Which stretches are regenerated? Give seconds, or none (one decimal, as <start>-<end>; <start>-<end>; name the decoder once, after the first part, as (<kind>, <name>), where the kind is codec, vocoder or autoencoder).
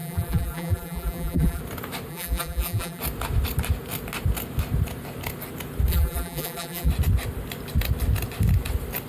0.0-1.6 (vocoder, BigVGAN v2); 2.1-3.0; 5.9-6.9